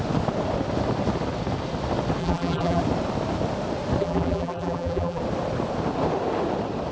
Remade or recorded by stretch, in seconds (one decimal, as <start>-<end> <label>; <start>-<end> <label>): 0.0-2.2 recorded; 2.2-2.8 remade; 2.8-4.0 recorded; 4.0-5.2 remade; 5.2-6.9 recorded